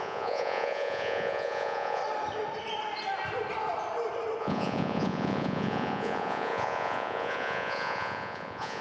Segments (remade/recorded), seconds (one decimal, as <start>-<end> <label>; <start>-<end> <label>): 0.0-2.0 remade; 2.0-4.4 recorded; 4.4-8.8 remade